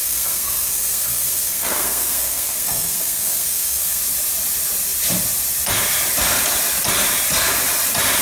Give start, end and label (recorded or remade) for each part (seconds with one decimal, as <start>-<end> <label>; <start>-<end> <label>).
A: 0.0-4.0 remade; 4.0-8.2 recorded